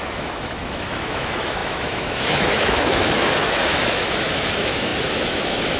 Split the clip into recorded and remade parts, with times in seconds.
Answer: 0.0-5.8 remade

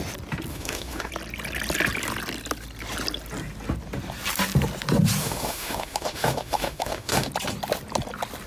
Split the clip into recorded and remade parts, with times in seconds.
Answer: 0.0-0.5 recorded; 0.5-1.1 remade; 1.1-5.2 recorded; 5.2-7.3 remade; 7.3-8.5 recorded